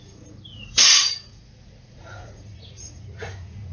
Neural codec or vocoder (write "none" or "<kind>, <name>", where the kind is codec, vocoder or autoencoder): vocoder, Vocos